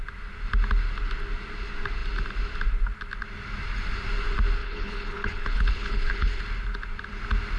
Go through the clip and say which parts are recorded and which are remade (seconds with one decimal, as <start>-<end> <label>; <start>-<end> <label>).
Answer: 0.0-4.6 recorded; 4.6-6.4 remade; 6.4-7.6 recorded